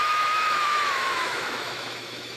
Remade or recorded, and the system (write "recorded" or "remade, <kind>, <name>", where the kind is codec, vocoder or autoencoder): remade, autoencoder, DAC-VAE